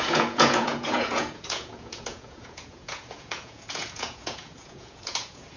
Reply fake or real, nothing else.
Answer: fake